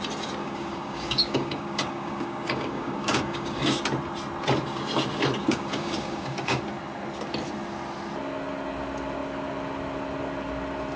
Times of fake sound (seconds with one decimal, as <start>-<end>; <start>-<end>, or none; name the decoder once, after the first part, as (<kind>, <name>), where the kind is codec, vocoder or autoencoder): 0.4-3.8 (codec, DAC); 5.4-6.6